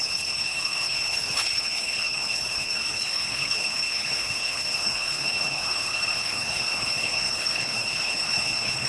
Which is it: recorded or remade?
remade